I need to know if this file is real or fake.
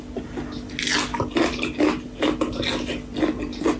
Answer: real